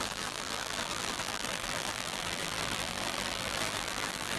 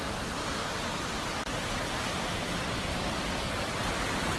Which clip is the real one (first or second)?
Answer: second